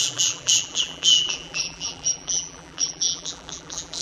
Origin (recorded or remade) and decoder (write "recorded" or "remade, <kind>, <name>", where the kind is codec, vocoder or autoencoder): remade, vocoder, BigVGAN v2